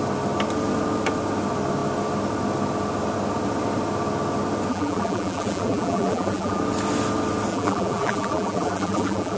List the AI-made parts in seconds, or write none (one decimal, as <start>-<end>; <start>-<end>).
4.7-6.6; 7.5-9.4